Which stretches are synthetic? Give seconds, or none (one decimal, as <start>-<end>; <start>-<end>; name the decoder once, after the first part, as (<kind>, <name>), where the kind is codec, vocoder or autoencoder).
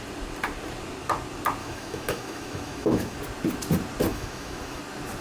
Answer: 1.6-3.2 (autoencoder, DAC-VAE); 4.1-4.8